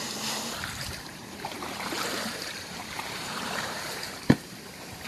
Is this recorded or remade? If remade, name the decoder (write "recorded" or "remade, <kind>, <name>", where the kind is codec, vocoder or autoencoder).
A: remade, vocoder, BigVGAN v2